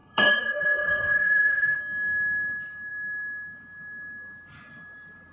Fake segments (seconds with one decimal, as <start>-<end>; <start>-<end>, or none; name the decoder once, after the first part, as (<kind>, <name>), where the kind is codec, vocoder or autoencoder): 0.0-1.8 (codec, HILCodec)